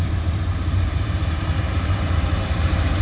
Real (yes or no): no